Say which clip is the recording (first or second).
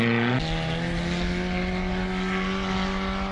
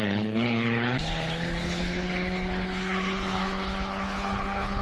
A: first